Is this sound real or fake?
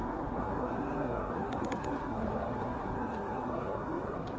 fake